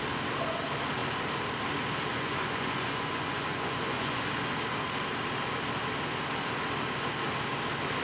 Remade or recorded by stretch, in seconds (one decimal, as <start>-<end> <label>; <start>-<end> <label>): 0.0-2.1 recorded; 2.1-4.3 remade; 4.3-8.0 recorded